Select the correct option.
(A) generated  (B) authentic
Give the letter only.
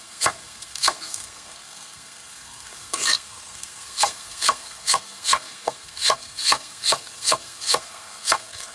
A